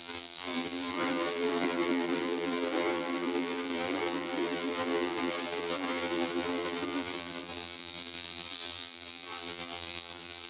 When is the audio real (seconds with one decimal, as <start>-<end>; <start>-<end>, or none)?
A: none